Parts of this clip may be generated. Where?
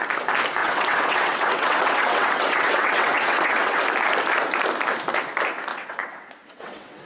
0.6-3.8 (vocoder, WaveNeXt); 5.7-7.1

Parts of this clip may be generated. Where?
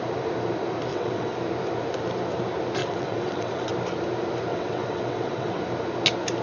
0.9-1.4 (vocoder, WaveNeXt); 2.8-3.7; 4.5-5.6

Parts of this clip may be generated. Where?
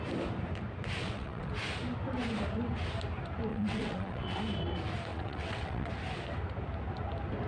1.0-1.5 (vocoder, WaveNeXt); 3.5-4.4; 5.1-5.9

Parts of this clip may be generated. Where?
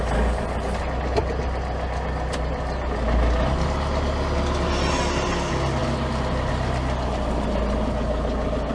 none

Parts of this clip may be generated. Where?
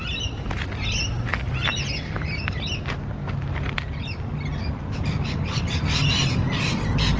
none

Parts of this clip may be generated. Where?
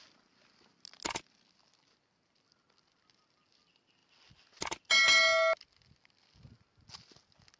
none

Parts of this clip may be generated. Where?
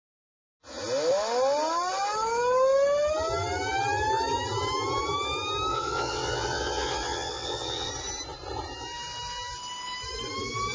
5.7-7.9 (vocoder, WaveNeXt)